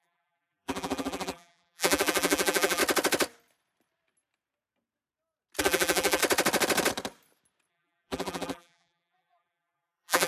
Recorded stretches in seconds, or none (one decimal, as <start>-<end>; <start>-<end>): 2.8-5.6; 6.2-7.7